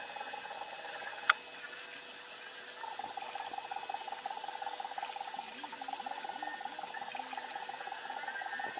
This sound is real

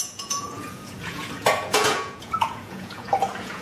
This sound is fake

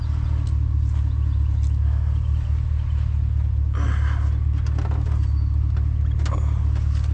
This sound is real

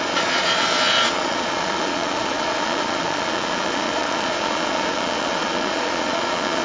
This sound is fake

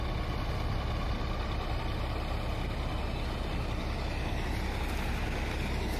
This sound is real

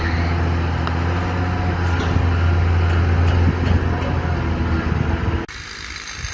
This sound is real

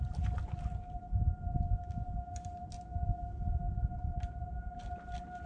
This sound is real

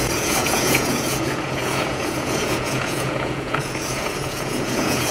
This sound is fake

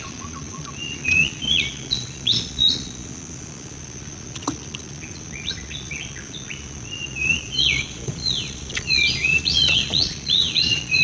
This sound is fake